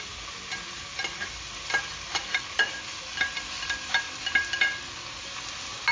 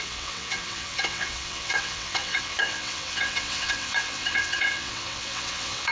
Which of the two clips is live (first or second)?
first